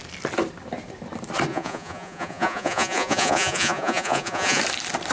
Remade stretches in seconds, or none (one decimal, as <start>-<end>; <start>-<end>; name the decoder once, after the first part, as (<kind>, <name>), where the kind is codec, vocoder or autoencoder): 1.5-4.6 (vocoder, Vocos)